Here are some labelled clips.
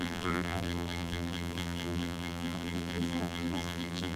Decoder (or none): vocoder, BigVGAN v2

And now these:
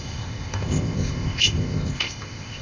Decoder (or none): codec, ZipCodec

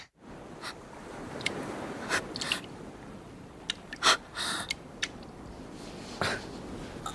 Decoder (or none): none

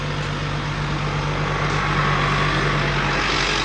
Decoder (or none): none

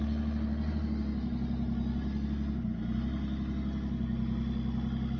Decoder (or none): none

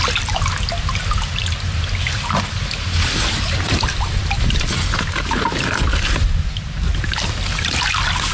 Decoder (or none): none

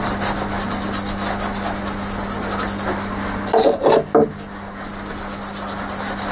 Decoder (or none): none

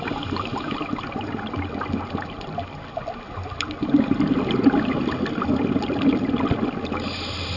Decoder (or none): none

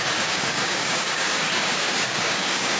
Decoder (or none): codec, DAC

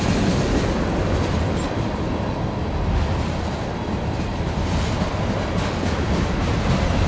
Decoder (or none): none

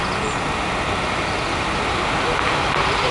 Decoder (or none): none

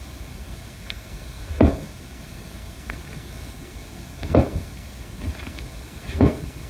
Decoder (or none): codec, SNAC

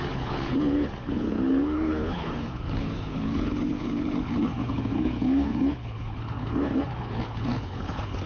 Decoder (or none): codec, HILCodec